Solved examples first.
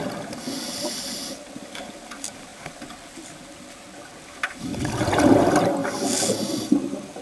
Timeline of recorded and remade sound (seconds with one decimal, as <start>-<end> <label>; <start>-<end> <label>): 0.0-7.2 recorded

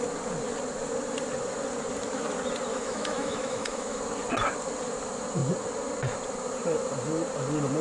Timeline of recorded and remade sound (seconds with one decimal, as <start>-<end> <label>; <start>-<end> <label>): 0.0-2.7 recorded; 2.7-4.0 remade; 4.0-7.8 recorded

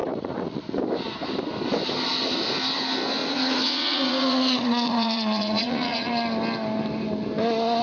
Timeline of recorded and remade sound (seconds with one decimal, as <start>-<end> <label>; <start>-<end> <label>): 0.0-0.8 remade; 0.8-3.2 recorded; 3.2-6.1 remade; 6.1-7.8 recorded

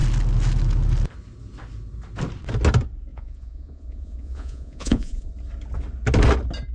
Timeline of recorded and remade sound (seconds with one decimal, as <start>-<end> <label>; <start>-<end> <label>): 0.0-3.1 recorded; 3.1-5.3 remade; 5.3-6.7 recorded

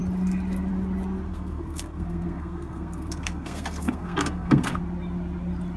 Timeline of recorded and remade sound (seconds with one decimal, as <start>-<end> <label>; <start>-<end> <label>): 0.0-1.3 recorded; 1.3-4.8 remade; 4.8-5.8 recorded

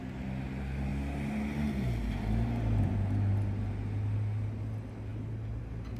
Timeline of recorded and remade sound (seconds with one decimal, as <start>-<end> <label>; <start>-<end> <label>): 0.0-6.0 recorded